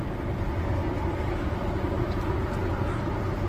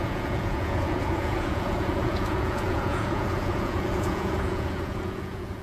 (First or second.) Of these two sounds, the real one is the first